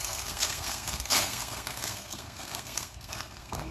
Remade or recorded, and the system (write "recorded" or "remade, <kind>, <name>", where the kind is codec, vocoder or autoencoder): remade, codec, SNAC